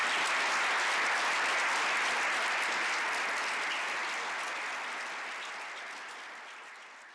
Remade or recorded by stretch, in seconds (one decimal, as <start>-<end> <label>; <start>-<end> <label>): 0.0-7.1 recorded